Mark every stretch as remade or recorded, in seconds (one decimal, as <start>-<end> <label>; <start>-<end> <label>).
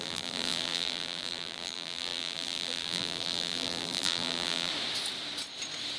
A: 0.0-4.7 remade; 4.7-6.0 recorded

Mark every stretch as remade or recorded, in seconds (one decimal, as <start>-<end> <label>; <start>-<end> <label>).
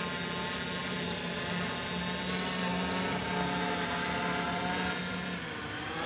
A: 0.0-0.8 recorded; 0.8-1.4 remade; 1.4-6.1 recorded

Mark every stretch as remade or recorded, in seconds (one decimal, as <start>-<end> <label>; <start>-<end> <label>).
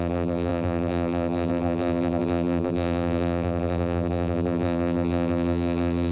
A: 0.0-6.1 remade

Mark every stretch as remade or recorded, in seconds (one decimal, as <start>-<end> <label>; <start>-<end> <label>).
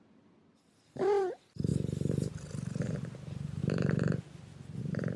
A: 0.0-1.7 remade; 1.7-2.3 recorded; 2.3-3.6 remade; 3.6-4.8 recorded; 4.8-5.2 remade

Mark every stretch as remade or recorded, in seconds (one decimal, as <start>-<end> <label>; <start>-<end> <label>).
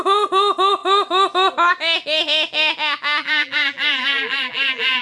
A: 0.0-3.2 recorded; 3.2-5.0 remade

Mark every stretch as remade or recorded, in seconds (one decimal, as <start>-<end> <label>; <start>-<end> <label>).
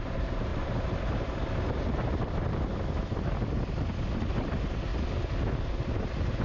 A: 0.0-0.5 remade; 0.5-4.3 recorded; 4.3-4.9 remade; 4.9-5.8 recorded; 5.8-6.4 remade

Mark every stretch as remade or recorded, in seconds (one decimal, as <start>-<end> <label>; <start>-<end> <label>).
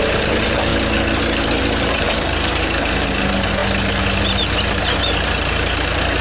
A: 0.0-0.7 remade; 0.7-1.2 recorded; 1.2-3.6 remade; 3.6-4.2 recorded; 4.2-6.2 remade